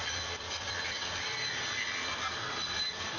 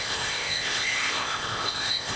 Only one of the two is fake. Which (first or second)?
second